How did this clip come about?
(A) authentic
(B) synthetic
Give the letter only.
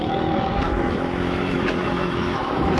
B